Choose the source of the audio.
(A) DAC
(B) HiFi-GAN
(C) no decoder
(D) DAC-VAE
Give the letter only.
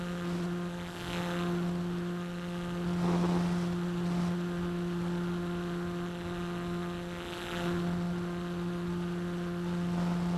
C